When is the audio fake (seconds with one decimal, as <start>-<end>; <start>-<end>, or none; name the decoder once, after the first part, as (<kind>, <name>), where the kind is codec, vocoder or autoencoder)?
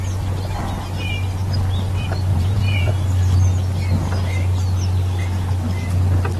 2.3-2.9 (vocoder, Vocos)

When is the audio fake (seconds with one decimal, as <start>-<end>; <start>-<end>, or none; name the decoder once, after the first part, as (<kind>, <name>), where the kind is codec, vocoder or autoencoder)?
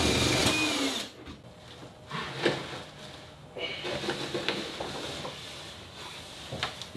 none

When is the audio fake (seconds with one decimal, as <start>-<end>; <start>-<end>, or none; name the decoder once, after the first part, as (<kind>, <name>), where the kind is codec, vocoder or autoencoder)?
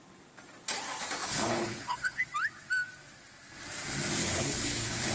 1.2-2.2 (codec, HILCodec); 4.2-5.1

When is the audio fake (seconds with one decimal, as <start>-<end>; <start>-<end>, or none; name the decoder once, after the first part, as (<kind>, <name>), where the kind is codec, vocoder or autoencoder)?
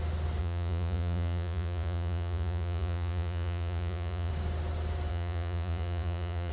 0.4-4.3 (vocoder, Vocos); 5.1-6.5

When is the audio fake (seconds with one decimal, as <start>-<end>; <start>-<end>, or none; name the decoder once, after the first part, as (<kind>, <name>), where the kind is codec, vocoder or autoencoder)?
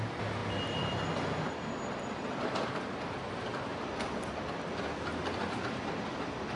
none